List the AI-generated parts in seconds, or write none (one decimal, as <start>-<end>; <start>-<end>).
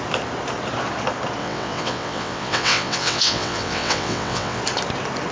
1.4-4.6